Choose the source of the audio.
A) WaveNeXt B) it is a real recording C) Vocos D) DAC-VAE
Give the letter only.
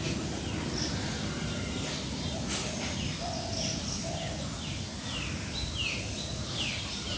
B